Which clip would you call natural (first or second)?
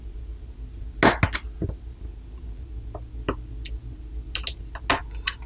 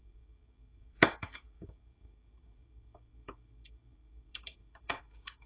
first